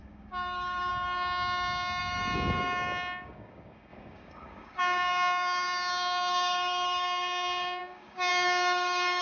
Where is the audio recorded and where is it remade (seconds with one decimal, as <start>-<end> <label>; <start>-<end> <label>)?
0.0-0.9 remade; 0.9-2.0 recorded; 2.0-9.2 remade